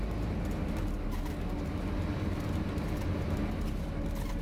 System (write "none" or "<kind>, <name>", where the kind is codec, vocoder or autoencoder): none